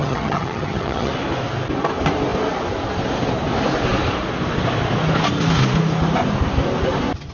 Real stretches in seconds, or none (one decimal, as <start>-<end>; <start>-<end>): 1.1-7.3